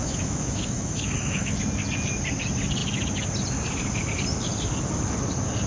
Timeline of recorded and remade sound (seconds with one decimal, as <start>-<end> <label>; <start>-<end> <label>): 0.0-1.6 remade; 1.6-5.7 recorded